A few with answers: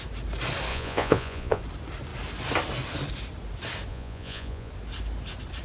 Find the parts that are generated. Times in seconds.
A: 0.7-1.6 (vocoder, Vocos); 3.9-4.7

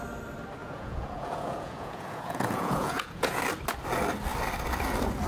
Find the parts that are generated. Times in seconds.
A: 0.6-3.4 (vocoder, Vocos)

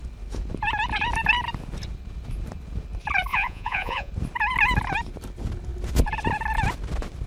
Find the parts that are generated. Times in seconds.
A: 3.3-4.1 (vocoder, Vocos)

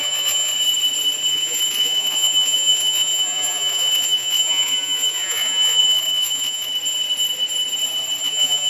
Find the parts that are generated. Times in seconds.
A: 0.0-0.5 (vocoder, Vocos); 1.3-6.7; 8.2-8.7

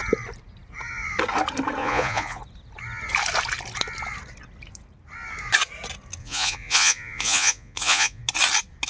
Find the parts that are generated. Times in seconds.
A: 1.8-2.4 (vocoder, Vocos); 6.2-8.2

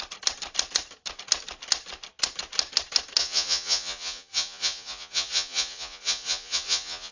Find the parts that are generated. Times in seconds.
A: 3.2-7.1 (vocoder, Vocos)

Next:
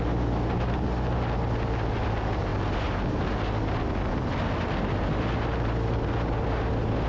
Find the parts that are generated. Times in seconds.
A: none